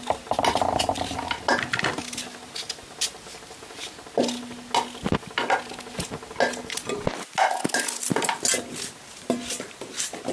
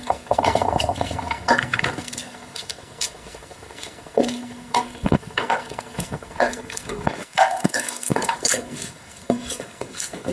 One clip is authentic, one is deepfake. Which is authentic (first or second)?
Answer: first